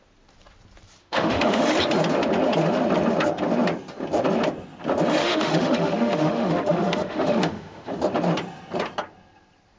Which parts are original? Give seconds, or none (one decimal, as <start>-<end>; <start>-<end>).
0.0-1.0; 1.6-5.2; 7.9-9.8